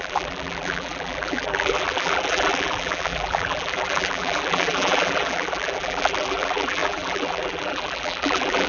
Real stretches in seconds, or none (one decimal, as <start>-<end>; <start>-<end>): none

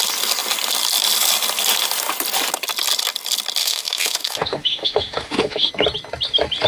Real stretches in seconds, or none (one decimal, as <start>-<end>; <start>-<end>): 0.0-3.6; 5.7-6.7

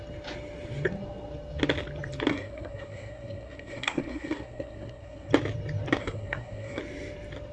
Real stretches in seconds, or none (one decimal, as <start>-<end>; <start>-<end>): 0.0-2.3; 5.3-6.0; 6.8-7.5